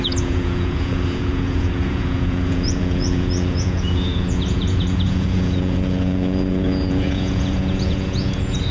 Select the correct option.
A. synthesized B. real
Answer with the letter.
A